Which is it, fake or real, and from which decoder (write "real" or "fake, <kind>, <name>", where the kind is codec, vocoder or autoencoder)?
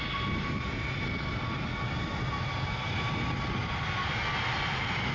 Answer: real